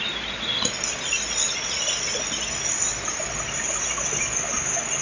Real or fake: real